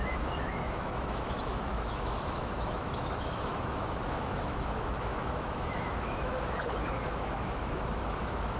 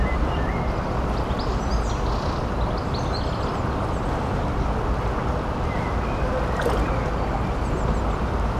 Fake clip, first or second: first